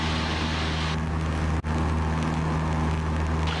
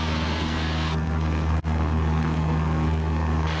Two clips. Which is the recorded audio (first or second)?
first